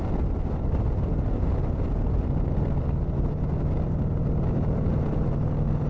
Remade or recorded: recorded